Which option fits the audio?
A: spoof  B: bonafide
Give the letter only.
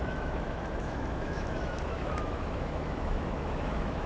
A